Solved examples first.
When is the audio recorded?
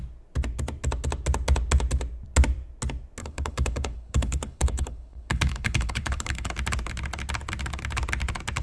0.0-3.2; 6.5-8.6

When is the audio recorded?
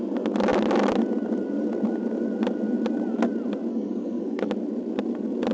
0.0-3.7; 4.5-5.5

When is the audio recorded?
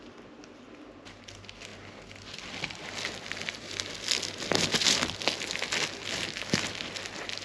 0.0-7.4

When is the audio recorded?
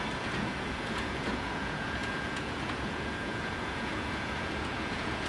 none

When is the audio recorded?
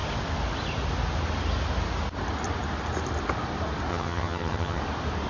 0.0-3.9; 4.8-5.3